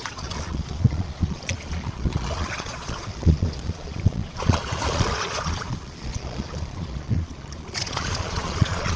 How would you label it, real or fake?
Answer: fake